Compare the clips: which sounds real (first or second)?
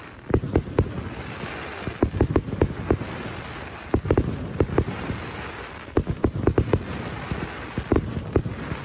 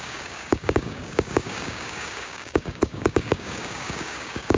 first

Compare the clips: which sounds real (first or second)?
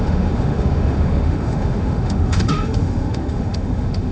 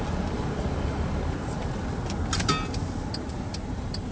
second